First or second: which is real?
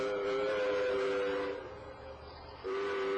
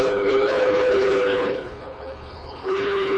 first